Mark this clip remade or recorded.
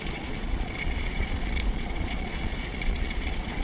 remade